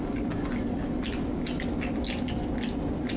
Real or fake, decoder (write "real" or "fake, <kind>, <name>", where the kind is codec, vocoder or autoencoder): real